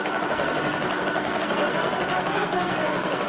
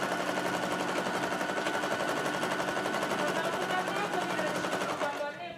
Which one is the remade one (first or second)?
first